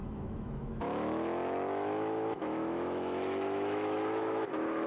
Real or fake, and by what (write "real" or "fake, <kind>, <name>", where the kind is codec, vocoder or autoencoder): fake, autoencoder, DAC-VAE